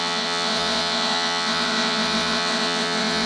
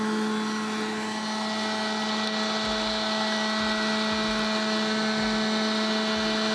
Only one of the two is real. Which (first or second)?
second